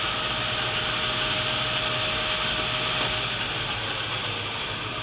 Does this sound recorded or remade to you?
recorded